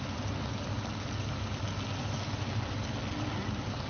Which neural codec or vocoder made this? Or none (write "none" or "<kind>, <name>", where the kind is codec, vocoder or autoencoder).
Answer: none